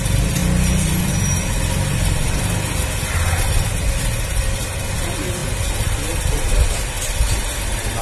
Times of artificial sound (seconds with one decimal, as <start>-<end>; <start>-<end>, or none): none